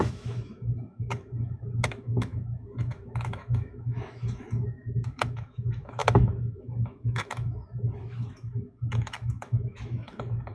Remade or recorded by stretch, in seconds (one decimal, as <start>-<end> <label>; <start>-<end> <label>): 0.0-10.5 remade